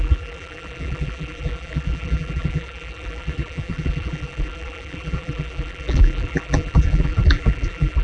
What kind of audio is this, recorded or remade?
remade